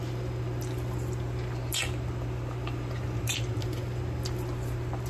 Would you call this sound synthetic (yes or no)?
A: no